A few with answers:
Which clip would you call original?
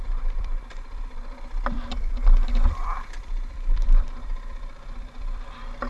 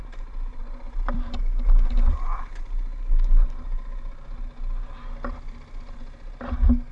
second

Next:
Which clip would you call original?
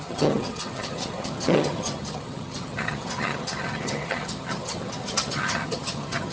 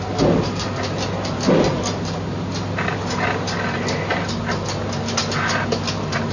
second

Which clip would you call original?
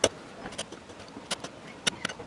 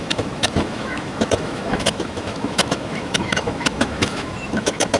first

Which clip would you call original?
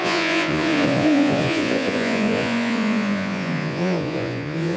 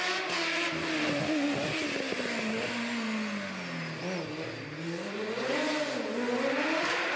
second